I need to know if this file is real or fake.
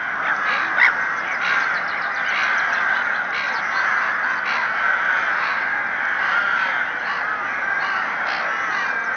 real